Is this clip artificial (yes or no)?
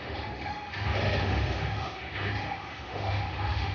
yes